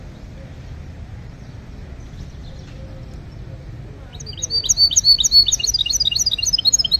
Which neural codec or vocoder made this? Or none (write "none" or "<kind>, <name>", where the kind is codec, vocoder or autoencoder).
none